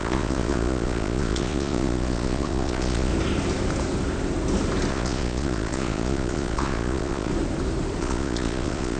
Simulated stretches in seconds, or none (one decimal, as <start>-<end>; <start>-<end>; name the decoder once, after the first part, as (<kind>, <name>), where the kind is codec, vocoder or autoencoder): 0.0-3.1 (vocoder, Vocos); 4.9-7.3; 8.0-9.0